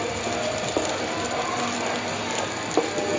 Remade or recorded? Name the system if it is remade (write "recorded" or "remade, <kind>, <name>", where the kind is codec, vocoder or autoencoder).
recorded